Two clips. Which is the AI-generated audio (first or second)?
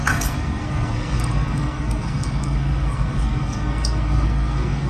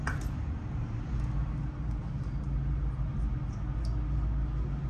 first